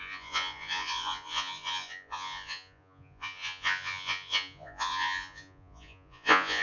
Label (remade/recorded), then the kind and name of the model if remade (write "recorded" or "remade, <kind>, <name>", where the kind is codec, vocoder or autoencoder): remade, vocoder, Vocos